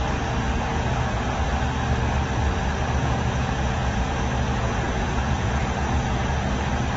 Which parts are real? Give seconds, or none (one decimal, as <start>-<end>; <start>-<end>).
0.0-0.7; 1.4-3.0; 6.3-7.0